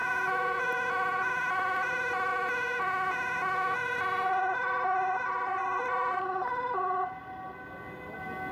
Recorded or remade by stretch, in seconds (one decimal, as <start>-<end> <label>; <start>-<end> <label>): 0.0-1.3 remade; 1.3-2.3 recorded; 2.3-3.8 remade; 3.8-8.5 recorded